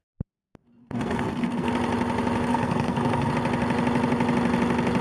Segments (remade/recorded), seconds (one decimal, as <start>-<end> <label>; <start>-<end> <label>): 0.0-0.8 recorded; 0.8-1.7 remade; 1.7-2.5 recorded; 2.5-3.3 remade; 3.3-5.0 recorded